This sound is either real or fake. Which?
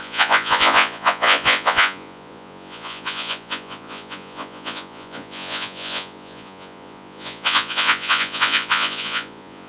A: fake